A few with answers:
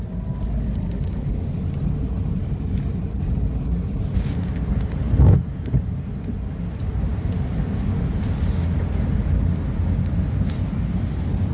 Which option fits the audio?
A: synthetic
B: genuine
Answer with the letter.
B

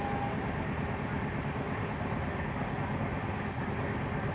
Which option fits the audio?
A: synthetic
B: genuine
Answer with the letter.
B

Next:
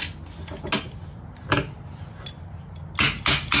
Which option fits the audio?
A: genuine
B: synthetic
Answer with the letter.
A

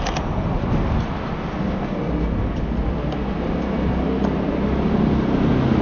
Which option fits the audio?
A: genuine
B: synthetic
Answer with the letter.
A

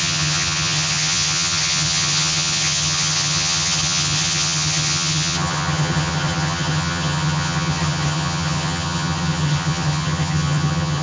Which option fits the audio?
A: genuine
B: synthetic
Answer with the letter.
B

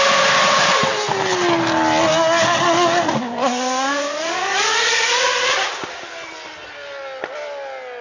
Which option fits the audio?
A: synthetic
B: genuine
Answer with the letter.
B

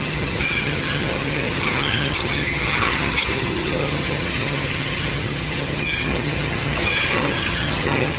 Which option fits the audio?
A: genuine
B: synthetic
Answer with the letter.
B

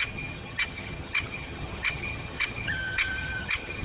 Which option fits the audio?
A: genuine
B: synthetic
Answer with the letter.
B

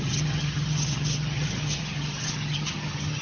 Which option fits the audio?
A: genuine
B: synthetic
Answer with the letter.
B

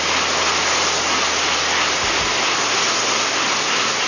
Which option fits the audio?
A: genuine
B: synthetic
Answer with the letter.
A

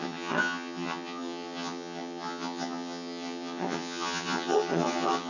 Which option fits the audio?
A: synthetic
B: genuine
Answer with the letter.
A